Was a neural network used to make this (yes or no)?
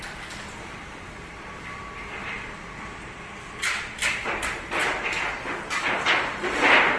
no